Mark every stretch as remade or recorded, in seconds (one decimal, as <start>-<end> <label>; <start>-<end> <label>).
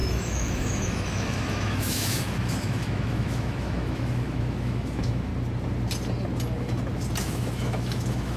0.0-5.3 remade; 5.3-7.2 recorded; 7.2-8.4 remade